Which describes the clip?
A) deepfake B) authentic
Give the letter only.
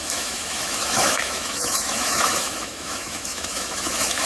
A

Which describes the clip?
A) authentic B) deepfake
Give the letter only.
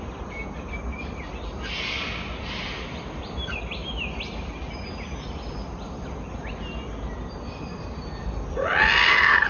A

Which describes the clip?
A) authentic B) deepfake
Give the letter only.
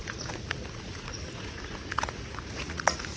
B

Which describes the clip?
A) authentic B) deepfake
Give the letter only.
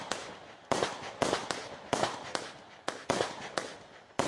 A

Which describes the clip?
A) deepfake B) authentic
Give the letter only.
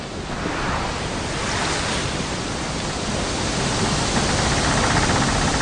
B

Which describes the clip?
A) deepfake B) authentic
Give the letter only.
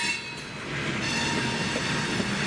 B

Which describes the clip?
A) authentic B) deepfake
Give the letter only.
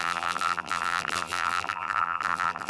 B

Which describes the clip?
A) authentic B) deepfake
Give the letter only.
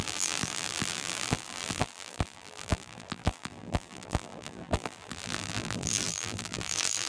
B